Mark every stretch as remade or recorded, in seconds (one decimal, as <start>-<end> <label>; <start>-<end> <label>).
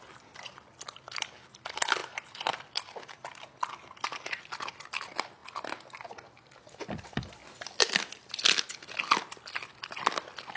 0.0-10.6 recorded